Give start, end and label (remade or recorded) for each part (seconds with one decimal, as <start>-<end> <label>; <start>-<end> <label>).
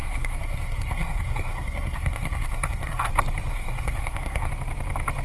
0.0-3.1 remade; 3.1-3.5 recorded; 3.5-4.5 remade; 4.5-5.2 recorded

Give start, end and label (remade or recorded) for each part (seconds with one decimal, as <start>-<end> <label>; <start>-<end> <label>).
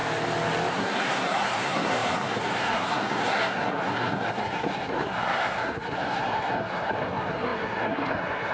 0.0-0.7 recorded; 0.7-8.5 remade